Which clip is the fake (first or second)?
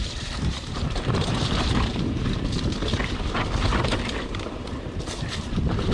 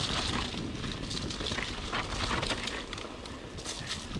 first